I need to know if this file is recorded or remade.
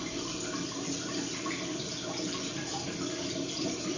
recorded